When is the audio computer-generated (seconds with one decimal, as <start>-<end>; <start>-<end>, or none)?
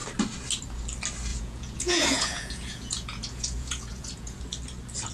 1.3-4.4